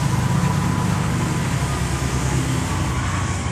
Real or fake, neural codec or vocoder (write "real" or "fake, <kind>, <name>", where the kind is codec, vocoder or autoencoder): real